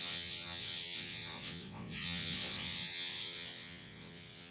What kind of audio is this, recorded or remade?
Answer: remade